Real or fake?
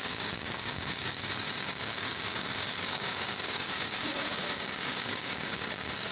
fake